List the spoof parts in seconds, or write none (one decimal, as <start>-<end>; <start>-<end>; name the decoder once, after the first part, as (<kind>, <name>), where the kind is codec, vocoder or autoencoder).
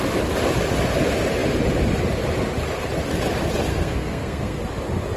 3.7-4.6 (codec, SNAC)